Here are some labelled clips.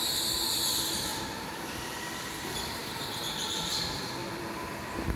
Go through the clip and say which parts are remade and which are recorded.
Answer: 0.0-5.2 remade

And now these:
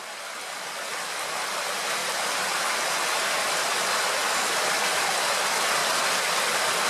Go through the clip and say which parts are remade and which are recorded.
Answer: 0.0-2.0 recorded; 2.0-2.5 remade; 2.5-4.2 recorded; 4.2-5.1 remade; 5.1-6.9 recorded